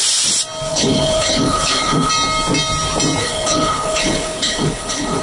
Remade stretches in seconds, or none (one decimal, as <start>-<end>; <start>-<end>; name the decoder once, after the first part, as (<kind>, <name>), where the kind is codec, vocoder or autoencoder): 0.7-2.1 (codec, HILCodec); 3.2-5.2